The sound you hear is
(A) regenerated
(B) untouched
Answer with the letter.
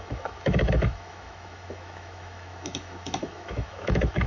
A